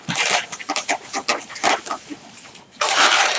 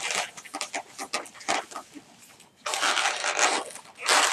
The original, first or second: second